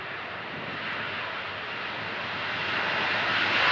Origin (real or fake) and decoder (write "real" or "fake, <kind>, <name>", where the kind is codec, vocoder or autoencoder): real